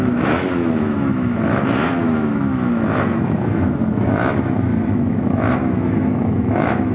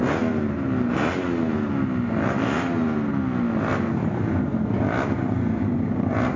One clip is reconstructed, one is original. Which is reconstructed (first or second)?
first